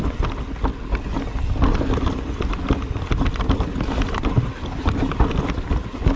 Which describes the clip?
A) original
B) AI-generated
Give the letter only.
A